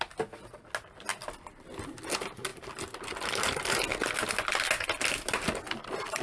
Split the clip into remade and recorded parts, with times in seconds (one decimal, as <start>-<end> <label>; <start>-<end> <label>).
0.0-6.2 recorded